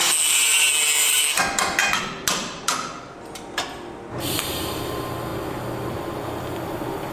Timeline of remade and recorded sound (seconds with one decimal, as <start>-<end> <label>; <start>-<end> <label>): 0.0-7.1 recorded